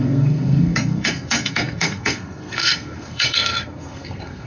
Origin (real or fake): fake